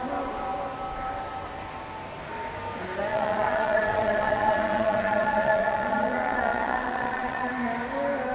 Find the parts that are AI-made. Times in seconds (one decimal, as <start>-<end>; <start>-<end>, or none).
3.1-7.5